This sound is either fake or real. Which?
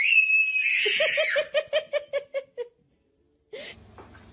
real